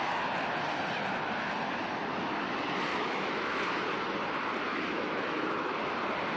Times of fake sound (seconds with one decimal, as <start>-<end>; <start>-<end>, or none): 2.9-3.6; 4.7-5.8